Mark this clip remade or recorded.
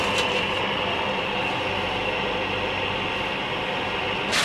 recorded